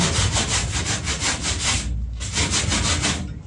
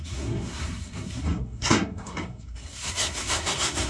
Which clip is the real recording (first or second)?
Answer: first